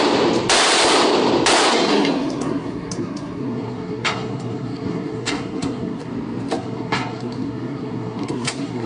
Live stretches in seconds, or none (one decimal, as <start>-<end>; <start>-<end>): 0.0-1.7; 6.1-6.5